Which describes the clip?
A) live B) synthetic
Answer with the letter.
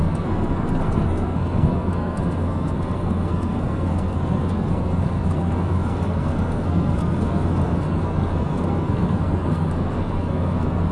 B